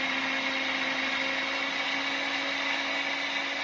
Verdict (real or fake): real